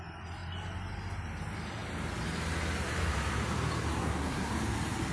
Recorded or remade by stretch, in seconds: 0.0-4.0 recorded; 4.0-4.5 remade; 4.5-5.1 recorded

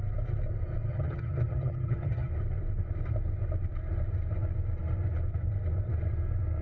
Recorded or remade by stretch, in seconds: 0.0-0.9 recorded; 0.9-2.3 remade; 2.3-6.6 recorded